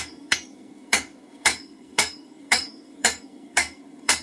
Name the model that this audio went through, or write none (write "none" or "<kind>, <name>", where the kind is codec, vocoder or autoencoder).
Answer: codec, SNAC